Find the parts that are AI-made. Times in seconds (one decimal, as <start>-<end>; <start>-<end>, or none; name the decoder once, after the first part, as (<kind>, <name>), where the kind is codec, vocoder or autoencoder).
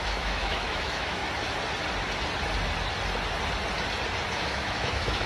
0.0-1.2 (autoencoder, DAC-VAE); 4.3-5.3